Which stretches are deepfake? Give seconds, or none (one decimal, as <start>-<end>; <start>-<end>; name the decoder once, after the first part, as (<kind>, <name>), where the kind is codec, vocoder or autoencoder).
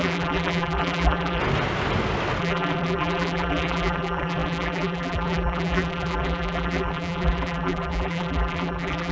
0.0-1.4 (vocoder, BigVGAN v2); 2.4-9.1